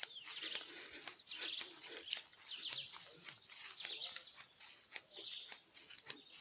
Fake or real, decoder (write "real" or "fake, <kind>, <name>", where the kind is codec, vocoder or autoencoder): real